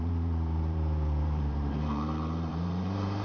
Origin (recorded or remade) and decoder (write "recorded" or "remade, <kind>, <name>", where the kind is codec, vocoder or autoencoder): remade, vocoder, BigVGAN v2